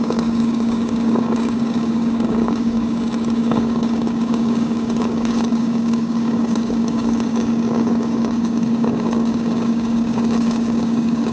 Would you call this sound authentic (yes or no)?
no